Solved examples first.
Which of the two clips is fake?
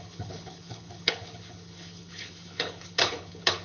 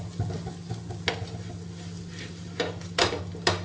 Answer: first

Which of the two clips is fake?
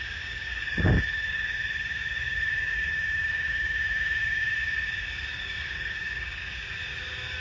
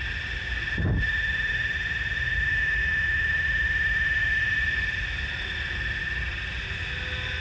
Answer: first